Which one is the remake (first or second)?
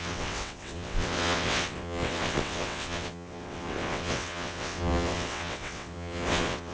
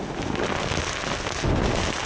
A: first